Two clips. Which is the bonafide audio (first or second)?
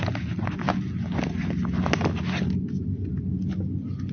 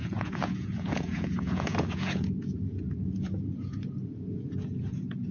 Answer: first